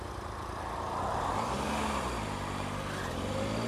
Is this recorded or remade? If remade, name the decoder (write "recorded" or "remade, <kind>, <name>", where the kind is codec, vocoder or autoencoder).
recorded